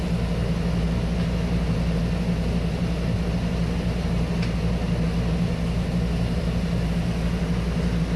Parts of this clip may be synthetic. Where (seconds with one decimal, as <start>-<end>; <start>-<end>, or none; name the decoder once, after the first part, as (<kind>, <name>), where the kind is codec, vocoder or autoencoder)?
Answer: none